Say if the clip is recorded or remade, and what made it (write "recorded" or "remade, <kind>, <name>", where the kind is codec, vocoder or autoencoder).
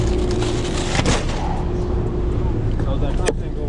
recorded